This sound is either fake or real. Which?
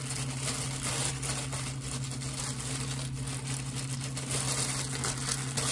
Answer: real